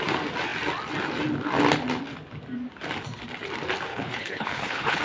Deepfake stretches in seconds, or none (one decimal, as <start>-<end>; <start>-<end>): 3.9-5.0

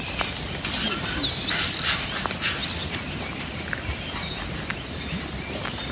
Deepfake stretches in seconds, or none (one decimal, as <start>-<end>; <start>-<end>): none

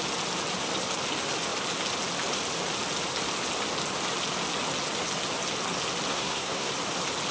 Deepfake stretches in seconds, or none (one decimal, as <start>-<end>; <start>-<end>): 6.1-6.7